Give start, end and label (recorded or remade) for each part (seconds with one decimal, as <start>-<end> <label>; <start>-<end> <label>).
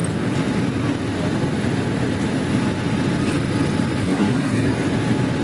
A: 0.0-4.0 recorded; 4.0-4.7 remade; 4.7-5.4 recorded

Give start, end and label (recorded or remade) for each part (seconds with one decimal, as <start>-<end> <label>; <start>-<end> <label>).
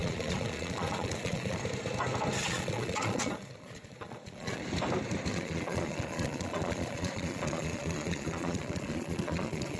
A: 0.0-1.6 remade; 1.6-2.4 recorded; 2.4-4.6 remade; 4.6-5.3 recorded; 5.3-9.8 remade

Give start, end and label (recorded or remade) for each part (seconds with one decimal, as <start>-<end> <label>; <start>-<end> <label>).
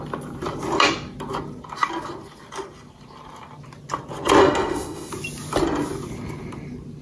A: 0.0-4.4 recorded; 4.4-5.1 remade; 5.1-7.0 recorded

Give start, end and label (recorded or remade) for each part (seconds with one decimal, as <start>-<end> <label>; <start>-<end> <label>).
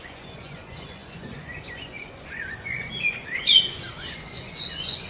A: 0.0-5.1 remade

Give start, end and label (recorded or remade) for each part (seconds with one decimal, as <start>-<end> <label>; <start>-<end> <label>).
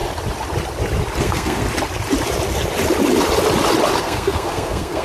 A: 0.0-1.2 recorded; 1.2-1.6 remade; 1.6-4.0 recorded; 4.0-5.0 remade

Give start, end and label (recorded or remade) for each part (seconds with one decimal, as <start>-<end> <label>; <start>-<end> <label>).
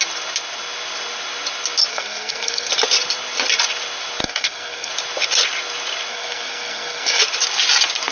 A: 0.0-1.9 recorded; 1.9-2.7 remade; 2.7-4.2 recorded; 4.2-4.9 remade; 4.9-6.1 recorded; 6.1-7.2 remade; 7.2-8.1 recorded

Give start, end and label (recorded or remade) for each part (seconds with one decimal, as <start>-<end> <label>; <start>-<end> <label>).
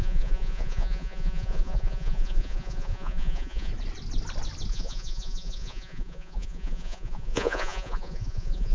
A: 0.0-3.7 remade; 3.7-4.7 recorded; 4.7-8.7 remade